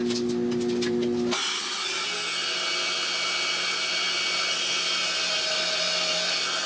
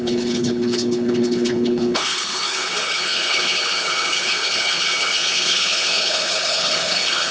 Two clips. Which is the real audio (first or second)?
first